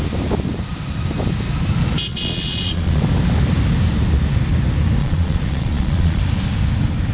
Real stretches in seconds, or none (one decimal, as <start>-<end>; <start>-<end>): 0.0-2.1; 3.0-5.0; 6.2-7.1